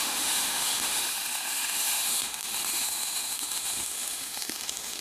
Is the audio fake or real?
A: fake